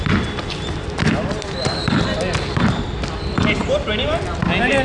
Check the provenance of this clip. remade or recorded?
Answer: recorded